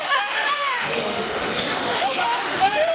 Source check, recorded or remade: remade